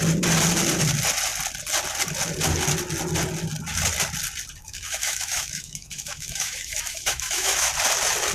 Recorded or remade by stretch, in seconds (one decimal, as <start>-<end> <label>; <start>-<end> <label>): 0.0-4.6 recorded; 4.6-7.7 remade; 7.7-8.3 recorded